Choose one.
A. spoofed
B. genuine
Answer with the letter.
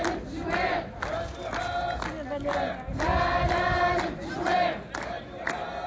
B